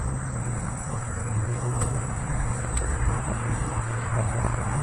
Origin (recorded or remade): remade